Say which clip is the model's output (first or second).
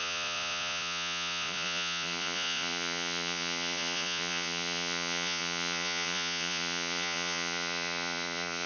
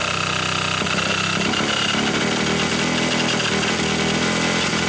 first